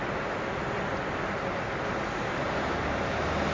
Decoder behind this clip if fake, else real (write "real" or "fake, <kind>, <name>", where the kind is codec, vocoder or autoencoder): real